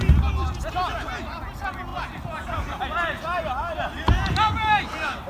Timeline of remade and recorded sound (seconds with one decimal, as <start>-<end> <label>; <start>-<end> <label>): 0.0-5.3 recorded

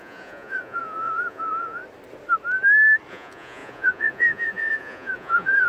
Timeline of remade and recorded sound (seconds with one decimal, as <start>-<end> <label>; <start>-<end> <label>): 0.0-1.8 remade; 1.8-3.1 recorded; 3.1-5.7 remade